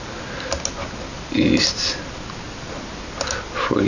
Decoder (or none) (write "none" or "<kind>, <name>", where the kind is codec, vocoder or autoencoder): none